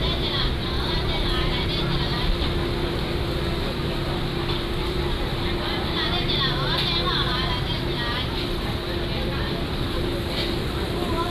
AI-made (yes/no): no